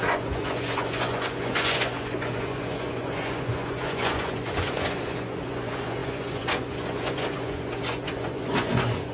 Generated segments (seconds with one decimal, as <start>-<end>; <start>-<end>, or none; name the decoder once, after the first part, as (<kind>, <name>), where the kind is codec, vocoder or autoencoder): 0.0-9.1 (vocoder, Vocos)